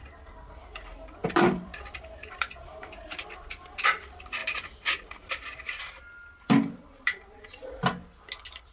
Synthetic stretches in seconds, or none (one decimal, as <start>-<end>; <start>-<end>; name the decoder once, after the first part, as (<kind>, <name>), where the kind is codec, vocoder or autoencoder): 1.2-2.5 (vocoder, BigVGAN v2); 4.4-5.8